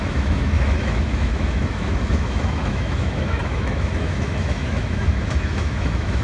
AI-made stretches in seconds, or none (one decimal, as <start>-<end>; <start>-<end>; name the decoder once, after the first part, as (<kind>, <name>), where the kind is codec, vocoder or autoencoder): 0.0-6.2 (autoencoder, DAC-VAE)